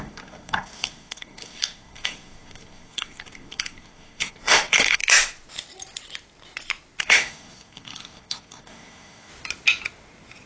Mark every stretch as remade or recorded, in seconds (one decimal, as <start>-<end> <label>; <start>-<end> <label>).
0.0-5.0 remade; 5.0-7.0 recorded; 7.0-9.3 remade; 9.3-10.5 recorded